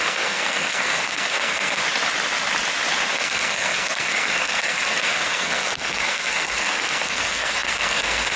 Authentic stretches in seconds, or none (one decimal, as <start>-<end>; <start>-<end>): 1.8-3.1